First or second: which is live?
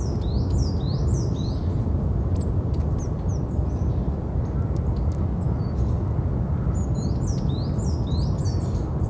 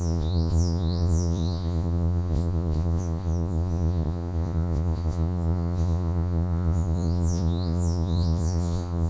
first